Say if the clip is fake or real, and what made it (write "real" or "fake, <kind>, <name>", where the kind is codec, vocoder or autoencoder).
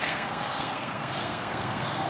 fake, codec, SNAC